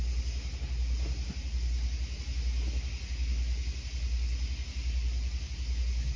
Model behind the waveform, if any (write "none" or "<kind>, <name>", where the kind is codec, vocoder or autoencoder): none